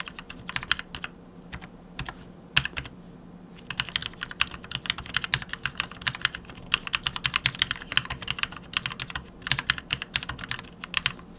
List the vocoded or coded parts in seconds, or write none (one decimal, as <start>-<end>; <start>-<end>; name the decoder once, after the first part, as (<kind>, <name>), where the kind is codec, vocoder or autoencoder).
none